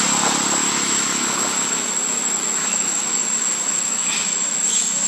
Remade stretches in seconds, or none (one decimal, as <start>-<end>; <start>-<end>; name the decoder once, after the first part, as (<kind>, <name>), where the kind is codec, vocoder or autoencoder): 0.6-1.9 (autoencoder, DAC-VAE); 2.6-5.1